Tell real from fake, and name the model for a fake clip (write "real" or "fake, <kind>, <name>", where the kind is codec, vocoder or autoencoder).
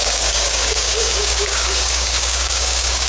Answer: fake, codec, DAC